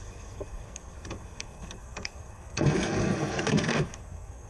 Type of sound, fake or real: fake